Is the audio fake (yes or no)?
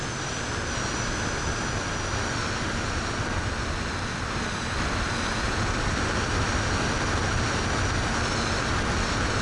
no